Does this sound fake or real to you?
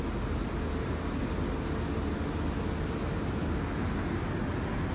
real